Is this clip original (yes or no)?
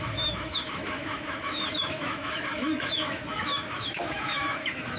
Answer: no